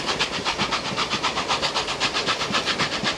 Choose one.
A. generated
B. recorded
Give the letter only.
B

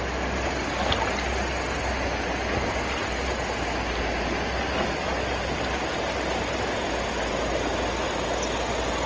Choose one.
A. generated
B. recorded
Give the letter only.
B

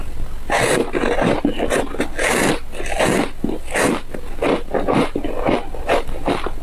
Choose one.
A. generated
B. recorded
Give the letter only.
B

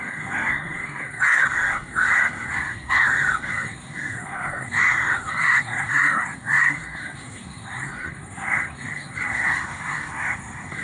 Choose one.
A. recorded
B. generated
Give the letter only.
B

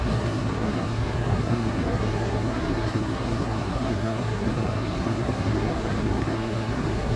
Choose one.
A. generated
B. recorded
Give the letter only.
A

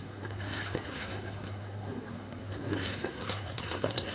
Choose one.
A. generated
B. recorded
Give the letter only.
A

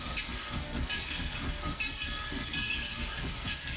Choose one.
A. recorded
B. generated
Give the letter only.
B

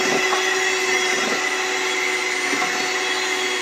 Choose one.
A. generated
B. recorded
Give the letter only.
B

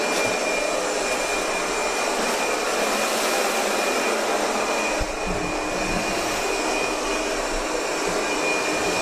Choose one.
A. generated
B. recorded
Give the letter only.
B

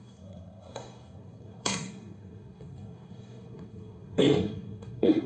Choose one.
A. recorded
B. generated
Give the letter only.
B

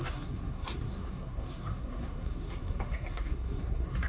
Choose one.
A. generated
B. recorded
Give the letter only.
A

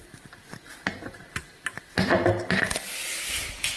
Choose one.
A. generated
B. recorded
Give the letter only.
B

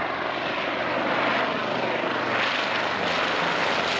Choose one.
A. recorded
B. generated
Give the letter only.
A